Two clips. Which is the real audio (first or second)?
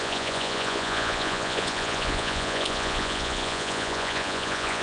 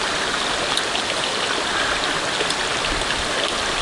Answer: second